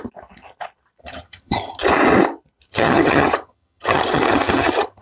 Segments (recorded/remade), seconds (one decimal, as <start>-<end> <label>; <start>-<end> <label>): 0.0-1.0 recorded; 1.0-1.8 remade; 1.8-2.7 recorded; 2.7-5.0 remade